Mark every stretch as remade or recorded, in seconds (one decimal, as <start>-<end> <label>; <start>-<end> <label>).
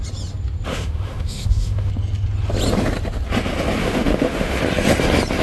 0.0-0.7 recorded; 0.7-1.9 remade; 1.9-3.8 recorded; 3.8-4.6 remade; 4.6-5.4 recorded